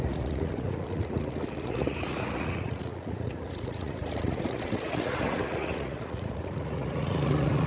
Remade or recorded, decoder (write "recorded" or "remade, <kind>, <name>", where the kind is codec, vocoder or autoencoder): remade, vocoder, Vocos